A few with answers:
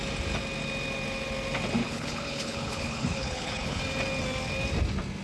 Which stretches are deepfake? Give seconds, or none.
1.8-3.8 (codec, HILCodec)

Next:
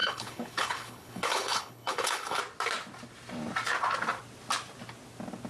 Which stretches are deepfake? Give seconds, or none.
0.0-2.4 (codec, HILCodec)

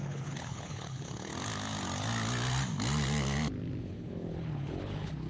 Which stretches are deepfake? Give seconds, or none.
0.0-1.3 (codec, HILCodec); 3.8-5.3

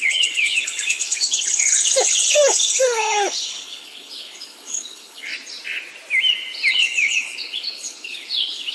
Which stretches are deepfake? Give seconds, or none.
0.0-5.3 (codec, HILCodec); 6.7-8.7

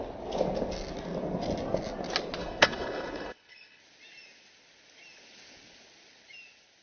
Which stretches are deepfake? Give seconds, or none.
2.4-3.8 (codec, HILCodec)

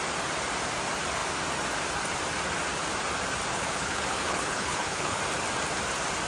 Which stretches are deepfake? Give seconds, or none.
3.5-5.2 (codec, HILCodec)